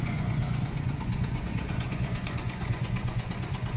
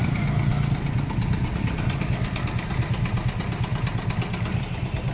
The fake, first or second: first